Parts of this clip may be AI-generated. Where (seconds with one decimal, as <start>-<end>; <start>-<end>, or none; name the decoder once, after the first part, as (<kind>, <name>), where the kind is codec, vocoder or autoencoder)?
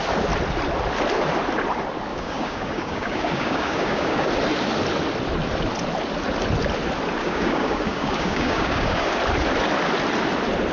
2.1-4.3 (codec, DAC); 7.2-9.2